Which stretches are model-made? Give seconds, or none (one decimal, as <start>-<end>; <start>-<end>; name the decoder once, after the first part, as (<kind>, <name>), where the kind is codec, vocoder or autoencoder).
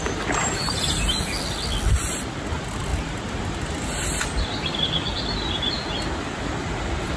none